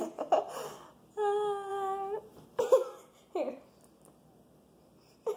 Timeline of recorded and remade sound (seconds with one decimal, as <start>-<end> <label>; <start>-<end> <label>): 0.0-5.4 recorded